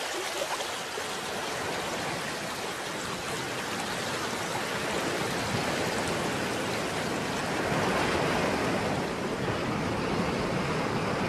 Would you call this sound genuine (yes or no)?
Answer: yes